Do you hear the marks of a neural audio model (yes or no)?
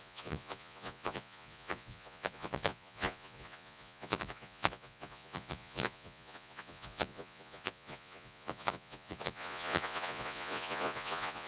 yes